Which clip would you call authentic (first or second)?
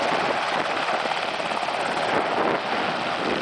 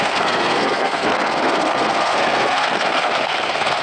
first